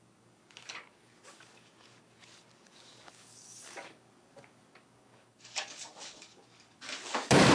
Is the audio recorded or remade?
remade